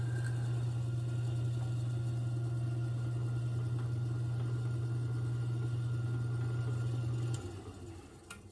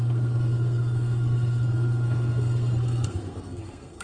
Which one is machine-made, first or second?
second